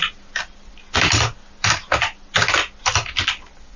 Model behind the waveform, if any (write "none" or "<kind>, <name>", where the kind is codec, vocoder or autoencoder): none